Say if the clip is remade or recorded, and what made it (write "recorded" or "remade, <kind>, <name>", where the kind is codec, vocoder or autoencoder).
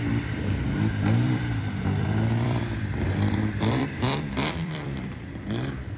remade, vocoder, BigVGAN v2